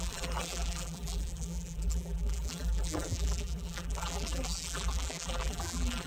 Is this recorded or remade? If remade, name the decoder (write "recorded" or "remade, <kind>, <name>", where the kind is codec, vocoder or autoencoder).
remade, vocoder, BigVGAN v2